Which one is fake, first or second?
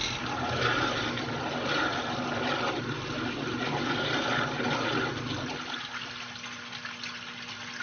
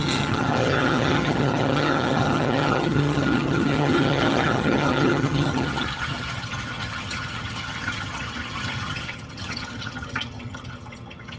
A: second